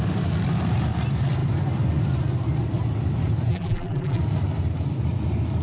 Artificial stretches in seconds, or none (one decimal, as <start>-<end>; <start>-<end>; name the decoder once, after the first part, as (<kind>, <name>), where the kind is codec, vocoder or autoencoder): 3.5-4.2 (vocoder, BigVGAN v2)